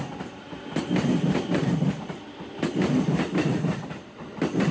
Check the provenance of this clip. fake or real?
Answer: real